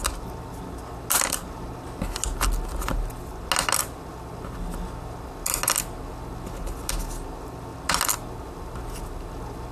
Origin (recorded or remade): recorded